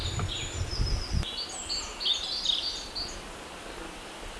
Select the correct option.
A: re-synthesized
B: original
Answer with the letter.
B